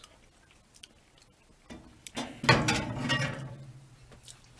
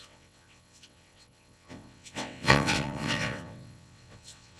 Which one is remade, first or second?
second